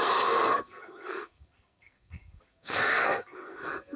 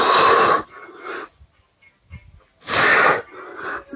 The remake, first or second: first